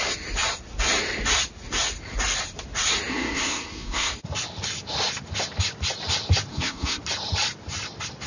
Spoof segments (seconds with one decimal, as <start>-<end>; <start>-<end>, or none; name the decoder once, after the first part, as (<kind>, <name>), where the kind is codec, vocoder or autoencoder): 3.1-4.1 (codec, SNAC); 6.5-7.0